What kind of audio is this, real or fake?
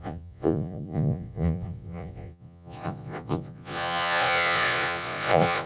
fake